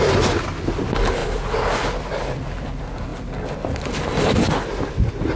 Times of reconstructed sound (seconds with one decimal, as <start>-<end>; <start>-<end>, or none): none